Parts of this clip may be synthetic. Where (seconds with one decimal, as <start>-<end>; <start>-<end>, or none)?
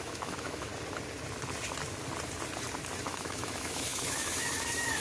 0.0-0.7; 3.0-5.0